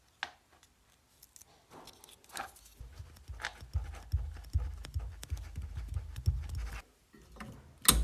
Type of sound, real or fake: real